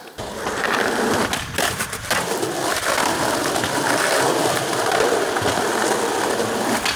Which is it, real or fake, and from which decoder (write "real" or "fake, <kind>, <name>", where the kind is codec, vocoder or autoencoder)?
fake, vocoder, BigVGAN v2